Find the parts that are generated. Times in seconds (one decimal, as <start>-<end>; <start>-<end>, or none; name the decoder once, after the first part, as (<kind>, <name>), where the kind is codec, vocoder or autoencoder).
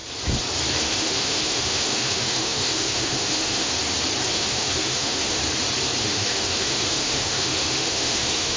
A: 0.8-3.7 (autoencoder, DAC-VAE); 4.3-5.4; 6.0-8.6